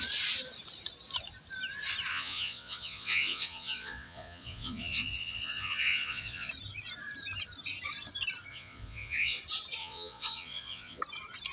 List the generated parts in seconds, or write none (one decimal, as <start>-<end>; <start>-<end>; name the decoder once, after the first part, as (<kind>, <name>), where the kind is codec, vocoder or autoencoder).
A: 2.1-6.5 (vocoder, Vocos); 8.5-9.4; 9.8-11.0